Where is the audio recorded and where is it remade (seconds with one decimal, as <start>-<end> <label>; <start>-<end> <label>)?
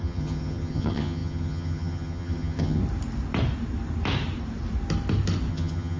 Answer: 0.0-2.8 remade; 2.8-5.5 recorded; 5.5-6.0 remade